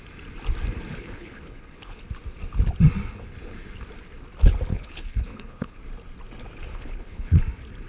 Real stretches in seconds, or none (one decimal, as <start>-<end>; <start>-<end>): 0.0-0.9; 2.0-4.7; 5.8-6.7; 7.4-7.9